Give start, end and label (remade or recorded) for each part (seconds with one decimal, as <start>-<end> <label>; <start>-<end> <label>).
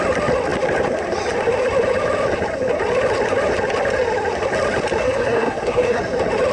0.0-5.0 recorded; 5.0-6.0 remade; 6.0-6.5 recorded